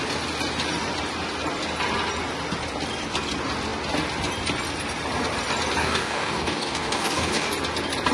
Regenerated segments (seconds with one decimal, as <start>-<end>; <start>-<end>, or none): 5.8-7.5